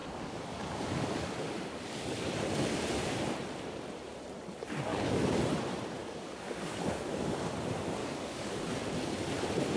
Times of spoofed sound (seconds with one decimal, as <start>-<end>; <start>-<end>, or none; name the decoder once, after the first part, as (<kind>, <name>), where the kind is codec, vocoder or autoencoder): 0.0-2.3 (codec, DAC); 4.9-5.4; 6.0-7.5; 8.0-8.7